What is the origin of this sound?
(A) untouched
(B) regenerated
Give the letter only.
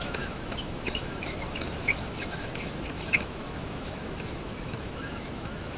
B